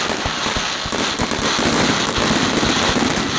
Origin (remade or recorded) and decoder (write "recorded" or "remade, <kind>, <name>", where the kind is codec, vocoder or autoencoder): recorded